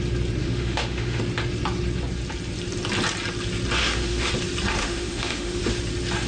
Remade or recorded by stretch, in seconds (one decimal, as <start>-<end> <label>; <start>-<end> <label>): 0.0-0.4 recorded; 0.4-1.2 remade; 1.2-3.8 recorded; 3.8-4.3 remade; 4.3-4.8 recorded; 4.8-5.6 remade; 5.6-6.3 recorded